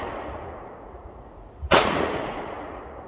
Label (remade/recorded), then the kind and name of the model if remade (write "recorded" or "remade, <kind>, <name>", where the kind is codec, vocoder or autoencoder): remade, vocoder, Vocos